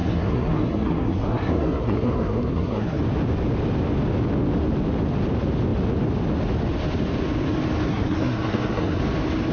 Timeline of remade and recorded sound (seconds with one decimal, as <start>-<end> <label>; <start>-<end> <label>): 0.0-3.0 remade; 3.0-7.9 recorded; 7.9-9.0 remade; 9.0-9.5 recorded